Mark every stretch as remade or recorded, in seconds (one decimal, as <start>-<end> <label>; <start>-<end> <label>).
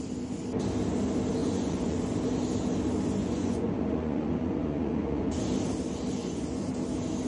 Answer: 0.0-1.4 recorded; 1.4-2.0 remade; 2.0-3.2 recorded; 3.2-5.4 remade; 5.4-6.2 recorded; 6.2-6.7 remade; 6.7-7.3 recorded